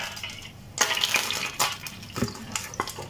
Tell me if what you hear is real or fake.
real